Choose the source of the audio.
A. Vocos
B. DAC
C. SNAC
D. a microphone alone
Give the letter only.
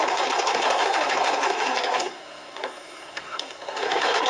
C